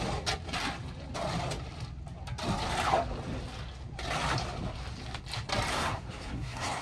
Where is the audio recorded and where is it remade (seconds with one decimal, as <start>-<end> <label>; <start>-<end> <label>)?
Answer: 0.0-5.7 recorded; 5.7-6.8 remade